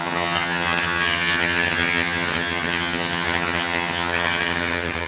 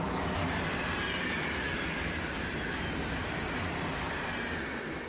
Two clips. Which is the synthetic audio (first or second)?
first